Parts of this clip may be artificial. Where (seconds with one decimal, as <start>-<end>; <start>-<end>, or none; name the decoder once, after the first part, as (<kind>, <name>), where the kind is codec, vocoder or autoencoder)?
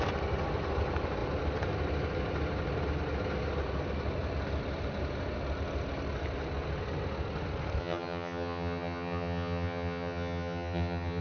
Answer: 7.8-11.2 (vocoder, HiFi-GAN)